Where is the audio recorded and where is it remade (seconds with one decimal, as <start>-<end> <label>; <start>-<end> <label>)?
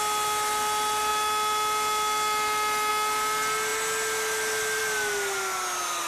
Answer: 0.0-6.1 recorded